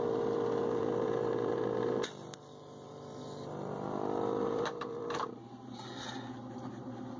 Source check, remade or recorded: remade